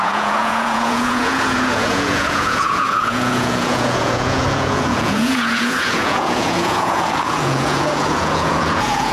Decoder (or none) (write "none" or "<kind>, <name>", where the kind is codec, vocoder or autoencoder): vocoder, Vocos